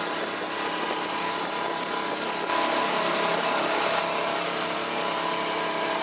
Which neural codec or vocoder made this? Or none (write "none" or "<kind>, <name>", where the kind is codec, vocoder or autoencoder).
none